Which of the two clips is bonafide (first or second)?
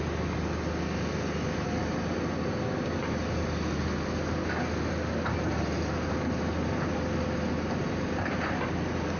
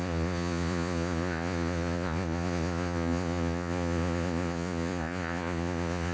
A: first